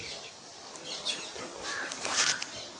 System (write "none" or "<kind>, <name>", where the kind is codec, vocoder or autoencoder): none